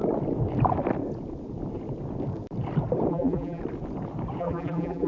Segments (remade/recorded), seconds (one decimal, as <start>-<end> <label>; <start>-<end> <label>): 0.0-3.1 recorded; 3.1-3.6 remade; 3.6-4.4 recorded; 4.4-5.1 remade